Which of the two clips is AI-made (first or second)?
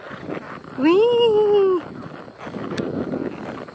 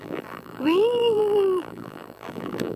second